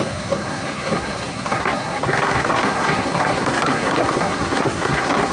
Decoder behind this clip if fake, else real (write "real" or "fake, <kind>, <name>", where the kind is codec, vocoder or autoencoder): fake, codec, SNAC